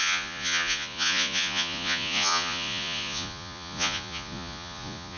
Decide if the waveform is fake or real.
fake